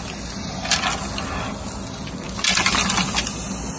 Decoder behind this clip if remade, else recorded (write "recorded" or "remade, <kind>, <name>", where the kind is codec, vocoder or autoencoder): recorded